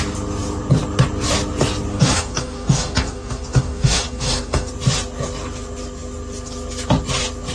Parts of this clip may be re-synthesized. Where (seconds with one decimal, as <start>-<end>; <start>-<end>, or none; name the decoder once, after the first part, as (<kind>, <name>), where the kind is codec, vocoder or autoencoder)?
1.9-4.7 (codec, DAC)